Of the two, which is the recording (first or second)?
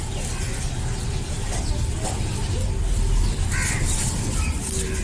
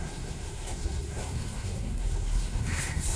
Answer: first